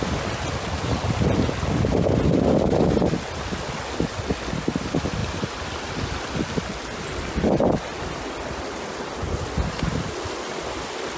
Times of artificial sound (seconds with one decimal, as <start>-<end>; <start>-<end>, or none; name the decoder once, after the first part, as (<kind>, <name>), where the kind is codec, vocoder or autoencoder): none